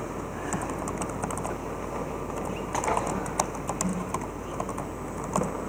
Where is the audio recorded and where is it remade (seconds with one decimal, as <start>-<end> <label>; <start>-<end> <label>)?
0.0-3.9 recorded; 3.9-4.6 remade; 4.6-5.7 recorded